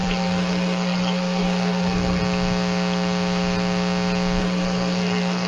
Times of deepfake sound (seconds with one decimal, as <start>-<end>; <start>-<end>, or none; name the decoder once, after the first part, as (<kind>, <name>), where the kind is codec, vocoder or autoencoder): 0.0-2.2 (codec, SNAC); 4.4-5.5